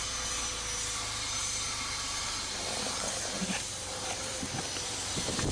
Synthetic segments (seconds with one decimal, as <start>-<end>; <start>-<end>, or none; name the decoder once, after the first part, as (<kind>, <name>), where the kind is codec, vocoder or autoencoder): 1.4-2.8 (vocoder, BigVGAN v2); 3.4-4.5